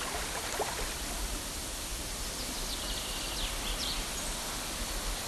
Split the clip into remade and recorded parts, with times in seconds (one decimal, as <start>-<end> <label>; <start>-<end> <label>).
0.0-5.3 recorded